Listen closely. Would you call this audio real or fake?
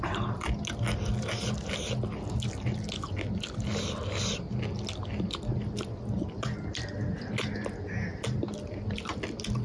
real